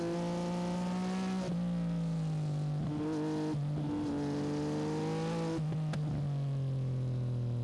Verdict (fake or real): real